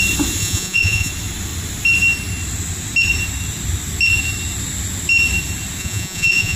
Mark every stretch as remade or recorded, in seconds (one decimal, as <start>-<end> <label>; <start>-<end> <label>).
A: 0.0-0.4 recorded; 0.4-1.1 remade; 1.1-5.8 recorded; 5.8-6.6 remade